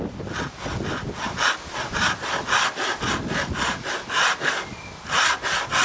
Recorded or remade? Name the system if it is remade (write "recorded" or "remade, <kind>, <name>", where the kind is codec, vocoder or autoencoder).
recorded